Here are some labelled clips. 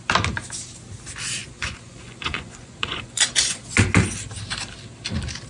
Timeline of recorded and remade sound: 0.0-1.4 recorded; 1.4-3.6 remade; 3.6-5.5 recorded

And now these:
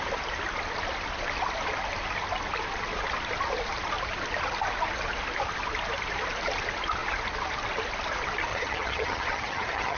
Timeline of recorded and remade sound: 0.0-8.5 recorded; 8.5-10.0 remade

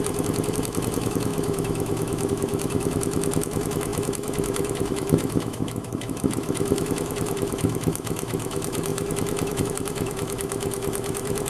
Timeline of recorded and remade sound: 0.0-11.5 remade

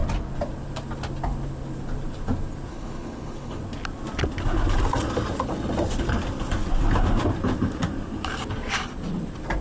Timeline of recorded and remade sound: 0.0-2.7 recorded; 2.7-3.6 remade; 3.6-9.6 recorded

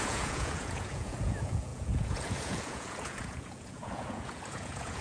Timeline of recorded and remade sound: 0.0-5.0 remade

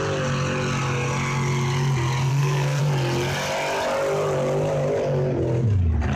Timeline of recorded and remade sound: 0.0-2.3 recorded; 2.3-2.8 remade; 2.8-6.2 recorded

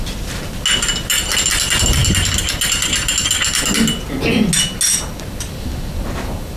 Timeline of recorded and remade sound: 0.0-6.6 recorded